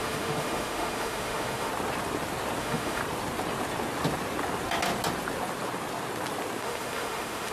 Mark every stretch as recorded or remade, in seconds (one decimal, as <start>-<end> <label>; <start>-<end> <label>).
0.0-1.7 remade; 1.7-2.6 recorded; 2.6-3.0 remade; 3.0-6.6 recorded; 6.6-7.5 remade

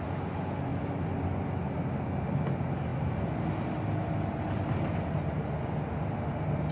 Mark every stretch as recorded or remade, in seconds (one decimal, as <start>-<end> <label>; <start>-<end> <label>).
0.0-6.7 recorded

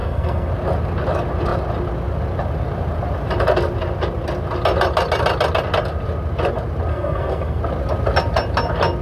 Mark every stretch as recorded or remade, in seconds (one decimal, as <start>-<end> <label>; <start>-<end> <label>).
0.0-0.5 remade; 0.5-6.9 recorded; 6.9-7.6 remade; 7.6-9.0 recorded

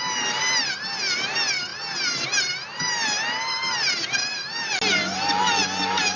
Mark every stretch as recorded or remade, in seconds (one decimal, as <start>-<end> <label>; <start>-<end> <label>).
0.0-6.2 recorded

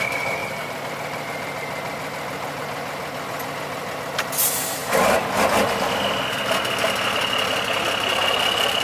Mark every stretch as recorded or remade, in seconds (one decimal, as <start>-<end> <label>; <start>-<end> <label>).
0.0-8.8 recorded

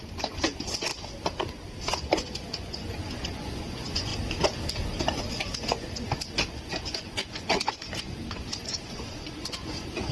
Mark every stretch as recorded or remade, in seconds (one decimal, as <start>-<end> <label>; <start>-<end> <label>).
0.0-0.9 remade; 0.9-1.8 recorded; 1.8-4.1 remade; 4.1-5.0 recorded; 5.0-10.1 remade

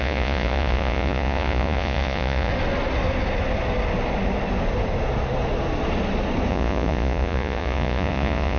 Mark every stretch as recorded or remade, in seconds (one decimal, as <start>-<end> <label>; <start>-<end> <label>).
0.0-2.5 remade; 2.5-6.5 recorded; 6.5-8.6 remade

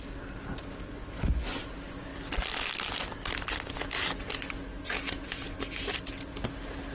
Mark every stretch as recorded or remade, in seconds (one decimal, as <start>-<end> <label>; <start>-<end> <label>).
0.0-6.9 recorded